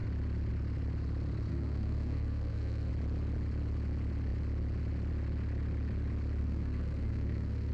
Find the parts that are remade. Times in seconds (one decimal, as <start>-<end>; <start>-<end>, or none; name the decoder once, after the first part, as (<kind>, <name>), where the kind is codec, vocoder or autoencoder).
1.5-2.9 (codec, SNAC); 6.4-7.7